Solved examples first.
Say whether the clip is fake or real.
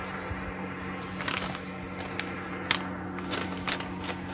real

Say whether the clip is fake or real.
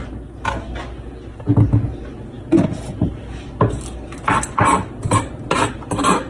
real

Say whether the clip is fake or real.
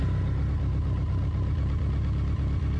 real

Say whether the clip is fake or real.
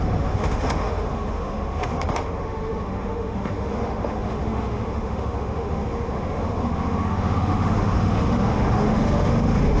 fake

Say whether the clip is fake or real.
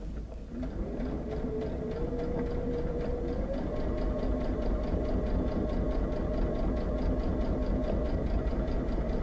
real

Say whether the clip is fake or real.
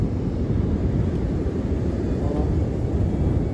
real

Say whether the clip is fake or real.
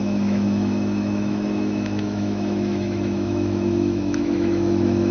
fake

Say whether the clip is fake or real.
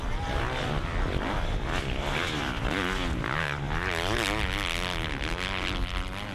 real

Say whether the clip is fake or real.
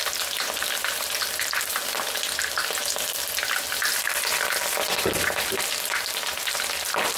real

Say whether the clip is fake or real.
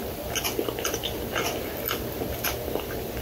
real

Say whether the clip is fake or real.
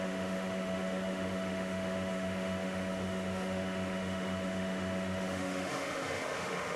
fake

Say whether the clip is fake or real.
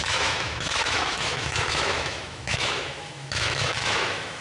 fake